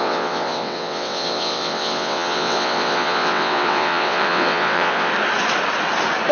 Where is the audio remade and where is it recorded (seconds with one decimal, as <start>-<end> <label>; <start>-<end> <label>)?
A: 0.0-5.1 remade; 5.1-6.3 recorded